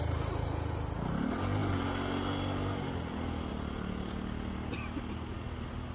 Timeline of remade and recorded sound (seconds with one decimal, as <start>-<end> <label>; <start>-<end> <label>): 0.0-5.9 recorded